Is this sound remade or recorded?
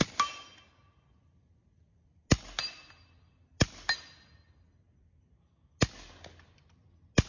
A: recorded